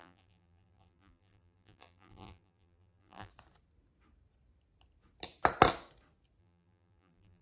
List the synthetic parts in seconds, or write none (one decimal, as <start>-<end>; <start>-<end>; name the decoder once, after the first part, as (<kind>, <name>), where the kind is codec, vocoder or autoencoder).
0.0-3.3 (vocoder, BigVGAN v2); 6.4-7.4